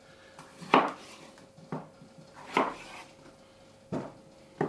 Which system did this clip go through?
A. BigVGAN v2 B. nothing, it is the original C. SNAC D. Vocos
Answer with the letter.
B